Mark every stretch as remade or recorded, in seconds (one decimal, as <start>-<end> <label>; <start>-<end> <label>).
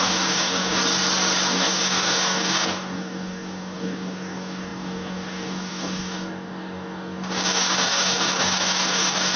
0.0-0.8 remade; 0.8-1.5 recorded; 1.5-9.4 remade